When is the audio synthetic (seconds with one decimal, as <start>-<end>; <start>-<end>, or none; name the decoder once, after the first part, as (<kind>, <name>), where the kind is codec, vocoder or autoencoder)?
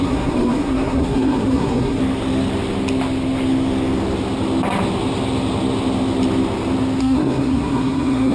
0.0-2.0 (codec, SNAC); 7.0-8.3